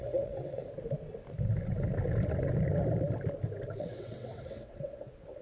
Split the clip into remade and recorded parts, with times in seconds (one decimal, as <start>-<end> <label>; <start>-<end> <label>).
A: 0.0-0.6 remade; 0.6-3.8 recorded; 3.8-5.4 remade

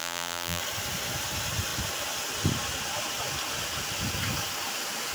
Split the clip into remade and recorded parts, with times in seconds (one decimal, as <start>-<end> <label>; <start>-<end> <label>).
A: 0.0-0.6 remade; 0.6-5.1 recorded

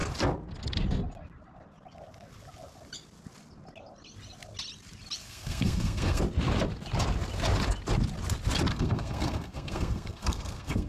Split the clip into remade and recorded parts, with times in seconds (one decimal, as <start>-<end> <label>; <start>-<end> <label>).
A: 0.0-5.2 recorded; 5.2-6.2 remade; 6.2-8.7 recorded; 8.7-10.9 remade

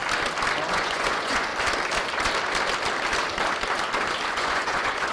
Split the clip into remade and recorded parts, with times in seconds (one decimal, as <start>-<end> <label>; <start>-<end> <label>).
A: 0.0-0.7 recorded; 0.7-1.5 remade; 1.5-4.3 recorded; 4.3-5.1 remade